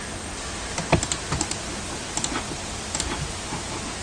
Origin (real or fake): real